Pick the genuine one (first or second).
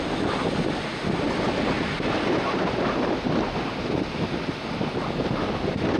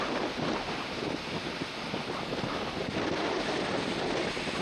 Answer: first